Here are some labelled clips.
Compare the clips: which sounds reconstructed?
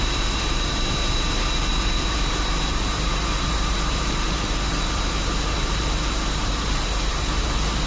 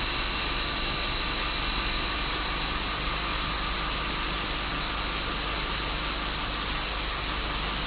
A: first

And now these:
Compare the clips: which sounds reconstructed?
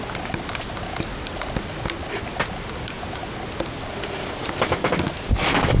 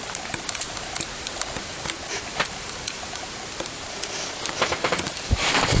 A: second